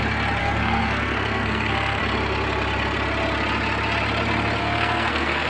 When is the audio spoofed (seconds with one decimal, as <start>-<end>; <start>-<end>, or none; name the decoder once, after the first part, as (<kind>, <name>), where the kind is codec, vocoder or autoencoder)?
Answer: 0.4-2.0 (codec, SNAC); 4.6-5.5